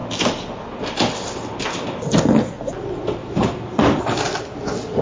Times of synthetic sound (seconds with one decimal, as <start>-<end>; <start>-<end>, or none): 3.2-4.0